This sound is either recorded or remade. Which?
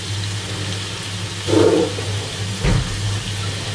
recorded